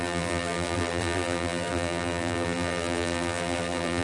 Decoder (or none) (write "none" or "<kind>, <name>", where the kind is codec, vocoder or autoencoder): vocoder, BigVGAN v2